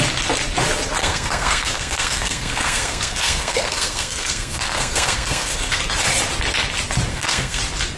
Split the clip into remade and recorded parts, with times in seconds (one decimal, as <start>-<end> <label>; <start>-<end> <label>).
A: 0.0-1.0 recorded; 1.0-5.8 remade; 5.8-7.1 recorded; 7.1-7.6 remade; 7.6-8.0 recorded